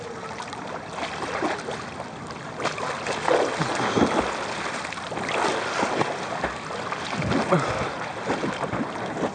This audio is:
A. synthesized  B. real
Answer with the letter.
B